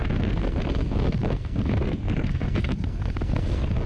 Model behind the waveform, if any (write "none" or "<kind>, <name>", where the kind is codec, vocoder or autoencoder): codec, SNAC